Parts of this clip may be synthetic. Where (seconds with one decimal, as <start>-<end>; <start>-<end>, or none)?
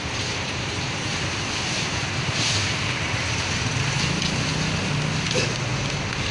0.0-4.5